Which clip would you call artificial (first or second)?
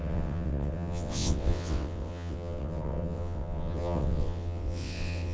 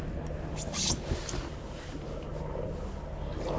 first